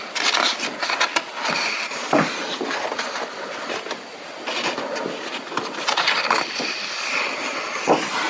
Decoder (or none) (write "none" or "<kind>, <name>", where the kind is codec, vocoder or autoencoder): none